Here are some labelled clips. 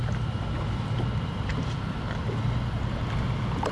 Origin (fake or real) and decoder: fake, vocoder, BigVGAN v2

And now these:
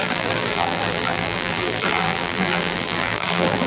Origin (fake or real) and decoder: fake, vocoder, BigVGAN v2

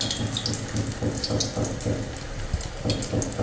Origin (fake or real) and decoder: real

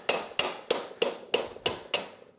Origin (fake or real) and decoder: real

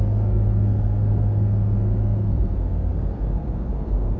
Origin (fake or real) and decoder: fake, codec, SNAC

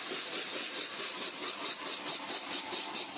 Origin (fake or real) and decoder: fake, vocoder, BigVGAN v2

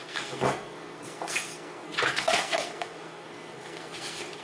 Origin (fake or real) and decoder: fake, codec, SNAC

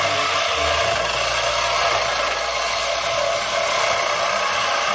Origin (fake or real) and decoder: real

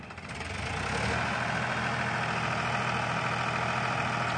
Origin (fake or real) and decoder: real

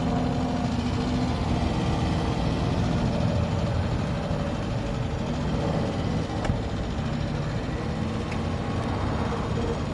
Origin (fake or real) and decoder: real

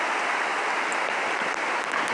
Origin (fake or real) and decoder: real